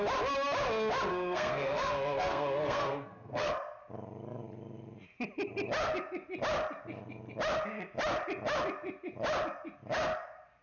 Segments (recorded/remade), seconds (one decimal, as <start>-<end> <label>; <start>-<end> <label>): 0.0-1.1 recorded; 1.1-3.5 remade; 3.5-10.6 recorded